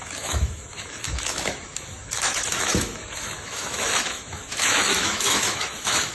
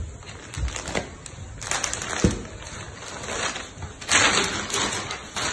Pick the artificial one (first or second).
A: first